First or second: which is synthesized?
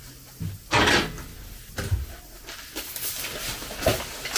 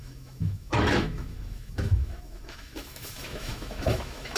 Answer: second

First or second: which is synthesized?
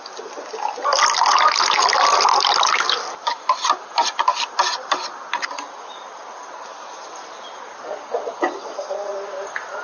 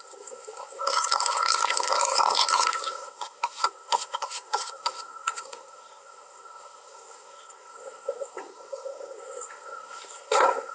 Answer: second